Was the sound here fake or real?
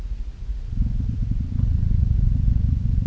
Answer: fake